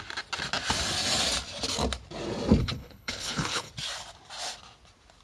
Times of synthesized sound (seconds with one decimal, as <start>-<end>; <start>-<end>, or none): 2.6-3.7